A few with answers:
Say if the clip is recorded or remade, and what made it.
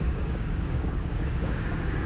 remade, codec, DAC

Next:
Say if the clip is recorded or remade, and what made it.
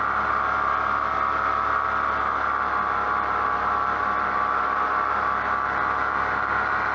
recorded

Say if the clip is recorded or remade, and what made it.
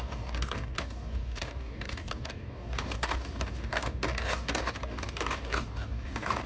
remade, codec, DAC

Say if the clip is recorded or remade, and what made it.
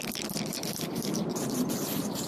recorded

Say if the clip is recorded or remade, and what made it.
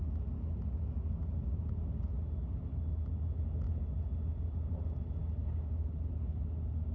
recorded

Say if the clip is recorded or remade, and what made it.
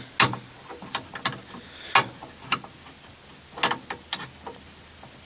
recorded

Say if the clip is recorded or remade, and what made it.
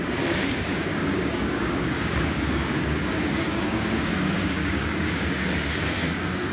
remade, codec, DAC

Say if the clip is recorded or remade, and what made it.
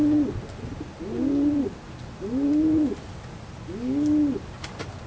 recorded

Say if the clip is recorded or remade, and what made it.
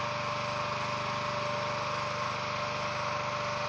recorded